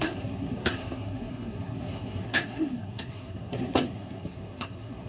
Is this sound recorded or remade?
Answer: remade